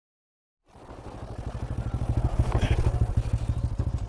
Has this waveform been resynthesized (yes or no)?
no